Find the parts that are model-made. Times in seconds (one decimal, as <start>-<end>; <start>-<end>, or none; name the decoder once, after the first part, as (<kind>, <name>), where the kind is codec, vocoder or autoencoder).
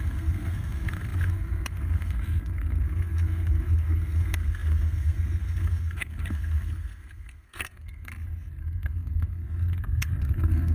0.0-8.1 (codec, SNAC); 8.6-10.7